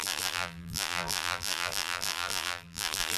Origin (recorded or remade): remade